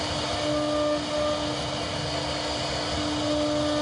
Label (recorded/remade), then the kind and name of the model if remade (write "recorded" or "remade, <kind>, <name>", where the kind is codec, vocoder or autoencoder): recorded